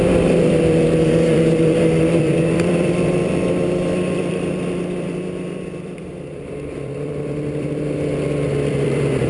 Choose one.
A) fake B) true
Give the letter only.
A